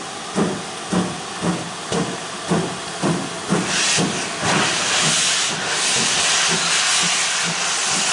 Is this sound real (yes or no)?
yes